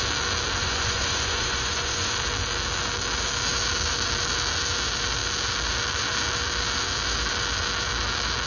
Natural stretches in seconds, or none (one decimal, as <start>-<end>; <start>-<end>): 0.0-0.6; 2.1-8.5